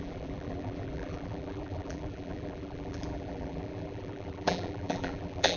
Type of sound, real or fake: fake